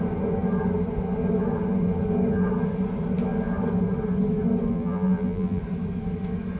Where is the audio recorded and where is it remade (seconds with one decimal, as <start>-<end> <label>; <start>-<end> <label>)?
0.0-4.7 recorded; 4.7-5.6 remade; 5.6-6.6 recorded